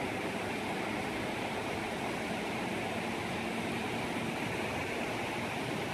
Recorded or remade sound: recorded